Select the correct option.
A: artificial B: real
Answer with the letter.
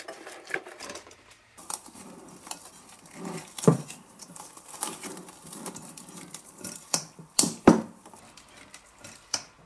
A